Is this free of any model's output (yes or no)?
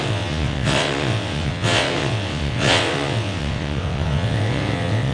no